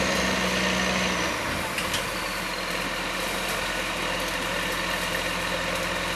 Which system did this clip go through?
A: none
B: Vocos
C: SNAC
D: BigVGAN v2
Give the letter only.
A